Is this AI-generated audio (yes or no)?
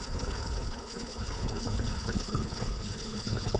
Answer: yes